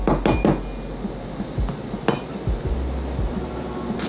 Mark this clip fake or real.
real